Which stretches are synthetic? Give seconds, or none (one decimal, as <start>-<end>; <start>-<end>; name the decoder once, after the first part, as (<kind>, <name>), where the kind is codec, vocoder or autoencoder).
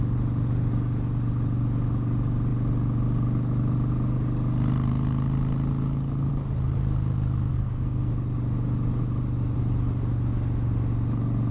7.5-8.1 (codec, SNAC)